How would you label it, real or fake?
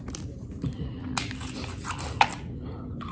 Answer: real